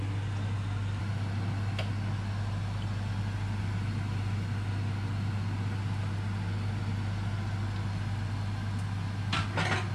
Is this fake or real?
real